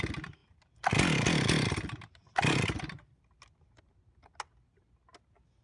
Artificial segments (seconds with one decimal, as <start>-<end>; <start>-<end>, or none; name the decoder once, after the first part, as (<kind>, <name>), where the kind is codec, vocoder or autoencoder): none